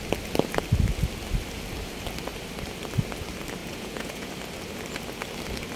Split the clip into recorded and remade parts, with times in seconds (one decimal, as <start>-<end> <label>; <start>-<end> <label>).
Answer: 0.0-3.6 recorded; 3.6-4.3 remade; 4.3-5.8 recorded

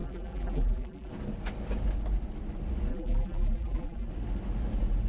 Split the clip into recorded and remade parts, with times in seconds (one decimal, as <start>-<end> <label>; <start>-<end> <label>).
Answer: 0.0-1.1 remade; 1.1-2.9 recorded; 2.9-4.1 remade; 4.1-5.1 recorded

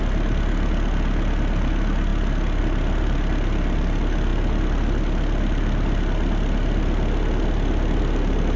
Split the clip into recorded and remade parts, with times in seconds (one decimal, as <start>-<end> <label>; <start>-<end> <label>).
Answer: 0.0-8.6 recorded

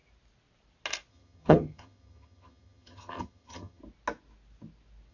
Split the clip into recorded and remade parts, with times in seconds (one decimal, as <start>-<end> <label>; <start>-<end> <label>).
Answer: 0.0-1.1 recorded; 1.1-3.8 remade; 3.8-5.1 recorded

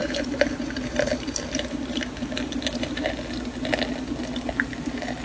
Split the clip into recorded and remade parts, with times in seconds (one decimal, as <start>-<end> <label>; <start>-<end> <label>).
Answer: 0.0-3.1 remade; 3.1-5.2 recorded

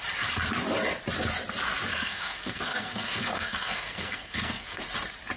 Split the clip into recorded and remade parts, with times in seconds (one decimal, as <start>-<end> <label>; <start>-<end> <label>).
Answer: 0.0-1.9 recorded; 1.9-4.8 remade; 4.8-5.4 recorded

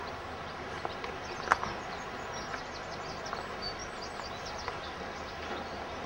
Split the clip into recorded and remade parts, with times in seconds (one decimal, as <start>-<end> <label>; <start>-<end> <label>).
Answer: 0.0-6.1 recorded

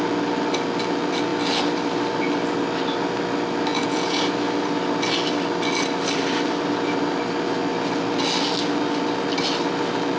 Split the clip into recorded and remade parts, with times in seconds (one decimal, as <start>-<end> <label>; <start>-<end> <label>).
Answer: 0.0-3.7 recorded; 3.7-4.2 remade; 4.2-10.2 recorded